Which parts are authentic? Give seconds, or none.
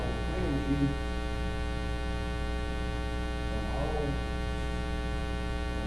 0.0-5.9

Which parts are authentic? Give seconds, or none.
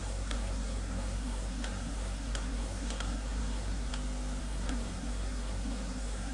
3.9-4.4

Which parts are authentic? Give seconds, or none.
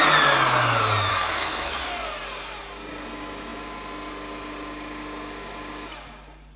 0.0-1.1; 1.8-6.6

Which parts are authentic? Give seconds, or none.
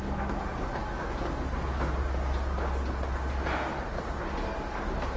0.0-5.2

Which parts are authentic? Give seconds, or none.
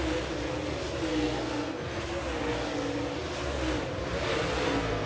0.0-1.1; 2.0-4.6